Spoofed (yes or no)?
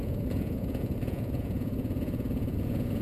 yes